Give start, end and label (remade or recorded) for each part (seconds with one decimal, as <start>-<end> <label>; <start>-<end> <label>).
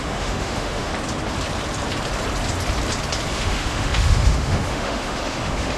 0.0-0.9 remade; 0.9-3.3 recorded; 3.3-5.8 remade